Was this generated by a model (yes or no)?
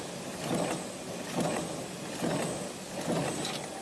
no